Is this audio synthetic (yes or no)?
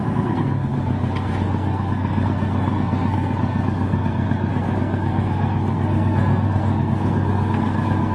yes